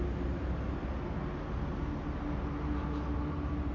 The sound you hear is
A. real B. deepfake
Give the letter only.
A